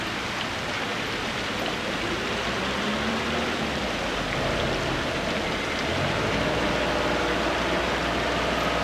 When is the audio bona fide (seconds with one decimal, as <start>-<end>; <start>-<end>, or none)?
0.0-8.8